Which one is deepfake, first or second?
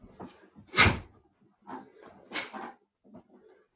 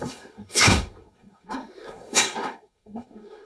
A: second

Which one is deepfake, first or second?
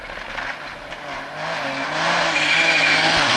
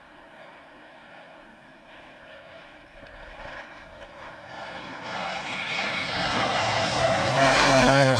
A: second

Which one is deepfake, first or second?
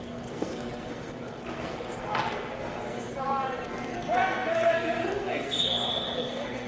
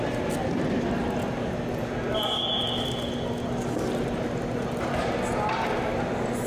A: first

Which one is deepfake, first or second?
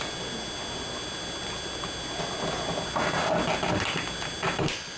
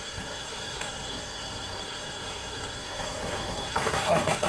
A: second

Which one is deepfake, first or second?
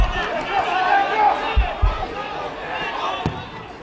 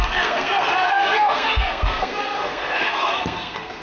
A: second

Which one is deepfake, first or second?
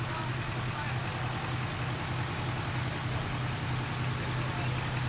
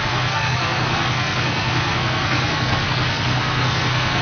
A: second